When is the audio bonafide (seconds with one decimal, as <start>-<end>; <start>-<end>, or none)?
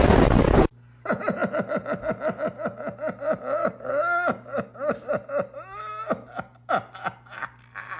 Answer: 0.0-3.6; 5.1-8.0